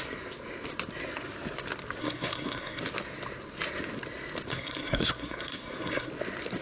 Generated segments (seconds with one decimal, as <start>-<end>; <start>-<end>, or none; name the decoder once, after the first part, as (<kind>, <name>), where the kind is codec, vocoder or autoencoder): 2.0-2.8 (codec, SNAC); 4.5-6.1